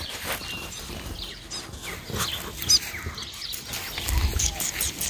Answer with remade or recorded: recorded